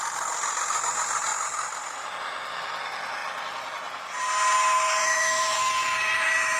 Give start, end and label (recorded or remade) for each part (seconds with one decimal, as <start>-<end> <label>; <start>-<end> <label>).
0.0-5.1 recorded; 5.1-5.7 remade; 5.7-6.6 recorded